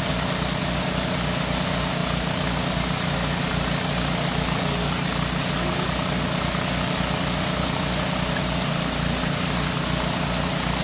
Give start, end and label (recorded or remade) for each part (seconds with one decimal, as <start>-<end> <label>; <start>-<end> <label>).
0.0-10.8 recorded